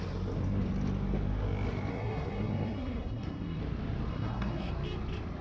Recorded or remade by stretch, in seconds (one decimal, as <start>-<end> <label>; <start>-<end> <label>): 0.0-1.9 recorded; 1.9-3.6 remade; 3.6-4.1 recorded; 4.1-4.7 remade; 4.7-5.4 recorded